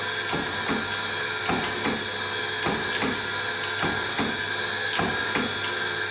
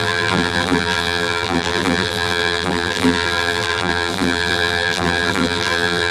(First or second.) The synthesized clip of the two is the second